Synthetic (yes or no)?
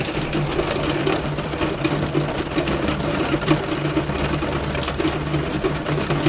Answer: no